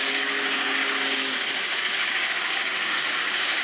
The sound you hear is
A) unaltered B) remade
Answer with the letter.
B